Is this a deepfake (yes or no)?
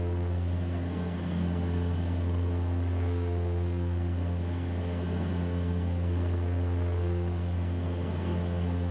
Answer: yes